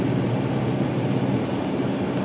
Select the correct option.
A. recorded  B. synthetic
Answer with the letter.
A